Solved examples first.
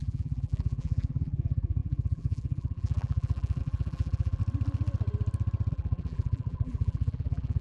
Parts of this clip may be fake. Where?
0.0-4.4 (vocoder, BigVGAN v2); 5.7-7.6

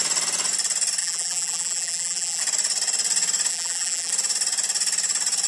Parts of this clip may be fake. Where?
1.0-2.4 (vocoder, BigVGAN v2); 3.5-4.1

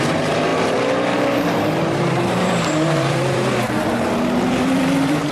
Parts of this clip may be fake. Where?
0.0-5.3 (vocoder, BigVGAN v2)

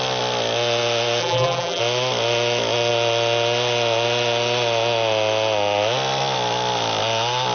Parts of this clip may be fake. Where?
1.2-1.8 (vocoder, BigVGAN v2)